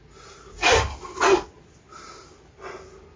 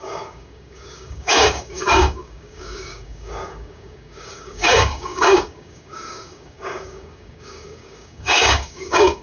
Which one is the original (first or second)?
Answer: first